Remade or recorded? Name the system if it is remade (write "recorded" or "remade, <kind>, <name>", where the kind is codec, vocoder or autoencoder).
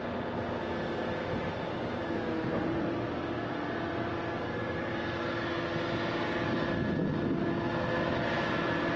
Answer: recorded